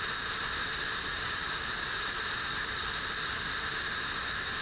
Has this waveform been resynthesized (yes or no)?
no